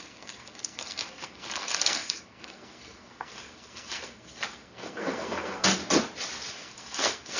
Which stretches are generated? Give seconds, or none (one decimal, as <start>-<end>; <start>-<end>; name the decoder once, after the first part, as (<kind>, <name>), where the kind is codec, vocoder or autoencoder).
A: 0.0-5.8 (codec, SNAC); 6.5-7.4